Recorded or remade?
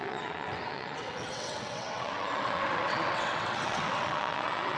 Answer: remade